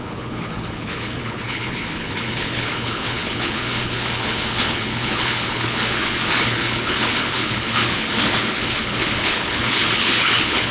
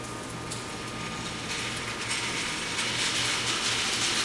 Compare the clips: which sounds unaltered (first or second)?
second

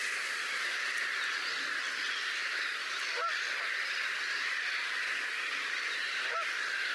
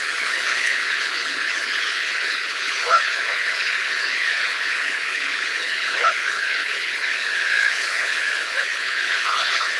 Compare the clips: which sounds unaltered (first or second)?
first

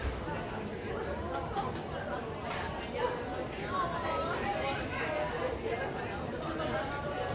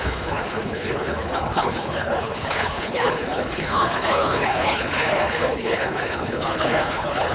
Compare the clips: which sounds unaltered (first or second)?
first